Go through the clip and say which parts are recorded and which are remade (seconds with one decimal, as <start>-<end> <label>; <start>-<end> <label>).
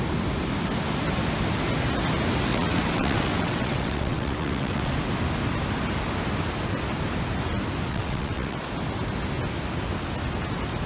0.0-2.5 recorded; 2.5-4.9 remade; 4.9-7.9 recorded; 7.9-8.6 remade; 8.6-10.9 recorded